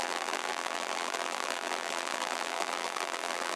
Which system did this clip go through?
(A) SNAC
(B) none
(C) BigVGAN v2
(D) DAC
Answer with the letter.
C